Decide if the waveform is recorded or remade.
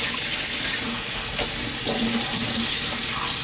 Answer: recorded